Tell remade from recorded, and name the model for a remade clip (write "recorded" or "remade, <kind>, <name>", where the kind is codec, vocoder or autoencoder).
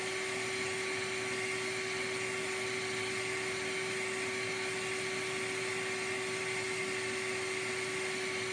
recorded